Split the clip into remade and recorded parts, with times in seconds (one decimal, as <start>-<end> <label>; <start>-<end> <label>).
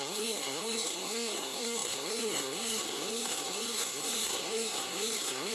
0.0-5.5 remade